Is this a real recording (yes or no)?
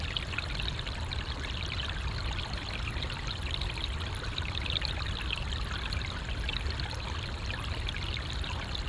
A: yes